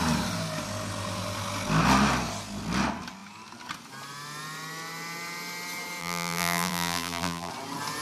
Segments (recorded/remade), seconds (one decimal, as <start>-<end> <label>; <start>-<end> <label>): 0.0-6.0 recorded; 6.0-7.5 remade; 7.5-8.0 recorded